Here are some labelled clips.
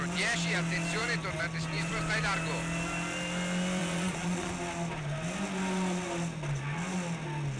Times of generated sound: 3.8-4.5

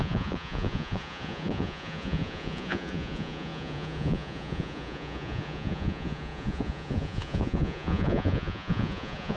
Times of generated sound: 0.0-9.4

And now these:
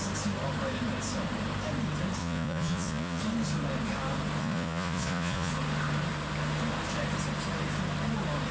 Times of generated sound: 2.2-3.2; 4.4-5.5

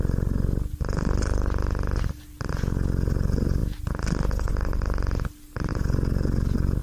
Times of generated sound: none

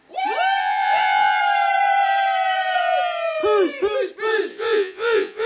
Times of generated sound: 0.6-1.4; 4.5-5.5